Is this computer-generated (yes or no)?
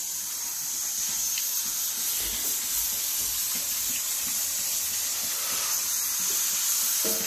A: no